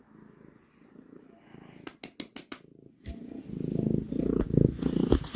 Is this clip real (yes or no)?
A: yes